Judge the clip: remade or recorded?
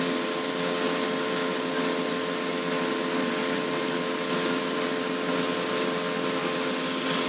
recorded